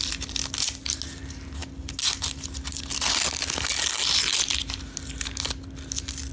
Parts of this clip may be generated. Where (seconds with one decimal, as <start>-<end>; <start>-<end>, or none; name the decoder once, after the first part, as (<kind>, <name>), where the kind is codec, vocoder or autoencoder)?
none